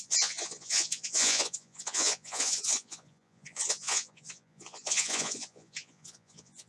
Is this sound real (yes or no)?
no